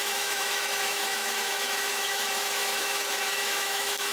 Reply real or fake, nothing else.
fake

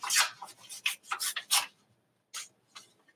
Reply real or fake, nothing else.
real